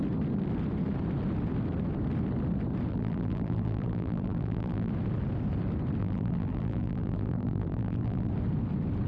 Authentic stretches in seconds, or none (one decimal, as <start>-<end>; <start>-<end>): 0.0-2.9; 4.9-6.0; 8.3-9.1